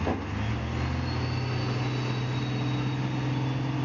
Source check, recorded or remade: recorded